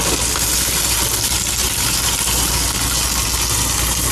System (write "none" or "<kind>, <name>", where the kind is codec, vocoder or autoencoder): none